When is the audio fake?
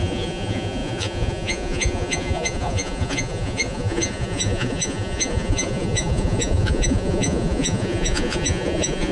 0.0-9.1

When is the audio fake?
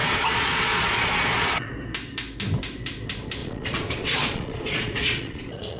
0.0-1.7; 3.4-5.8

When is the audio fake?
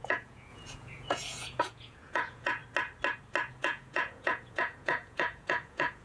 0.0-2.6; 3.5-6.0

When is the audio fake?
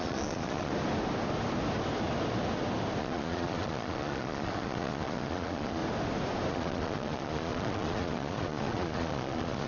0.0-0.7; 3.0-5.8; 6.5-9.7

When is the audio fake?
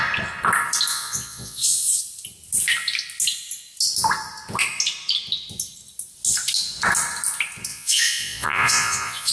0.9-2.0; 7.7-9.3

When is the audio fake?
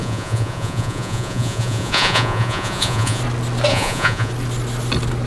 0.0-3.2; 3.7-4.3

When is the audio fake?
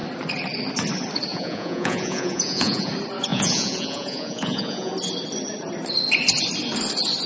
1.3-2.9; 3.3-4.9